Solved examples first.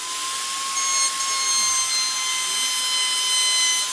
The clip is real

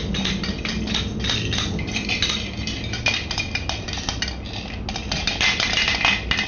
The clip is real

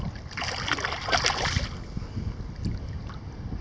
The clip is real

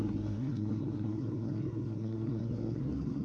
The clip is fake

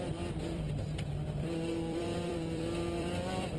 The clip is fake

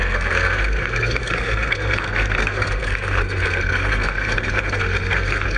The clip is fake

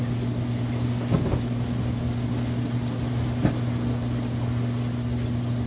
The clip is real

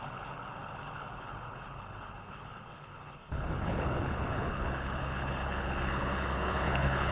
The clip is fake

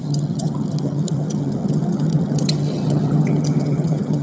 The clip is fake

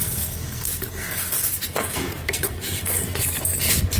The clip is fake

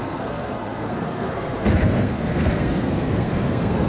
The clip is fake